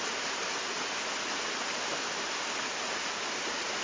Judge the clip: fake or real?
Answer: real